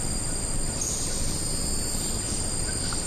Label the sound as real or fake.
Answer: real